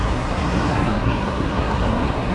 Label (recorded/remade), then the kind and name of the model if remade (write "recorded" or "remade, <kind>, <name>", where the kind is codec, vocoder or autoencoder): remade, codec, SNAC